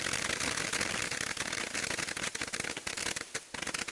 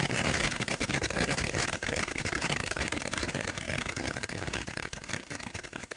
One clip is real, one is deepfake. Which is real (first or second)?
first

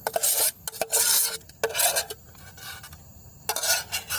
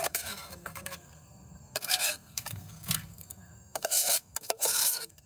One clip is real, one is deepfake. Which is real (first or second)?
first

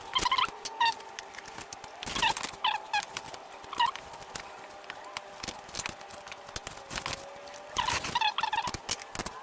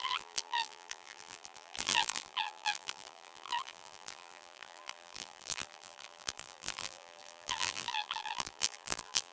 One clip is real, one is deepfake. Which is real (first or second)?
first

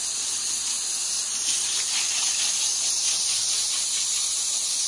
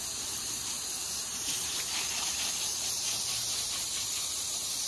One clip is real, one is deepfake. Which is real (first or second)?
first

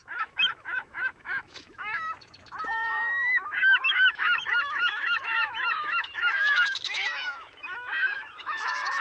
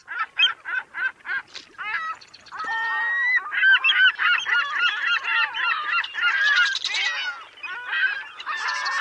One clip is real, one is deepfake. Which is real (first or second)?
second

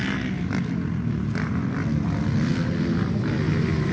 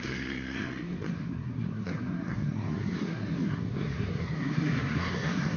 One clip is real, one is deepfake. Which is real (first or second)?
first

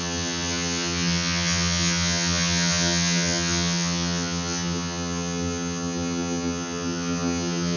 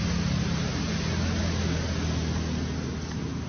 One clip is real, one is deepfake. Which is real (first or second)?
second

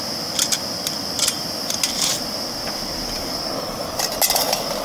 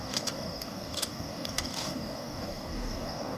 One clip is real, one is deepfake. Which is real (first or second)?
first